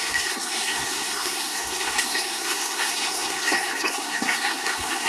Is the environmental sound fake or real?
fake